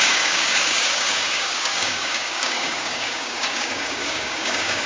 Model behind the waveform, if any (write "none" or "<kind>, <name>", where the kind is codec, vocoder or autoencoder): codec, DAC